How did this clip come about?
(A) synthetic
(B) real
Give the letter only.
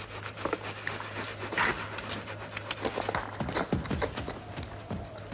B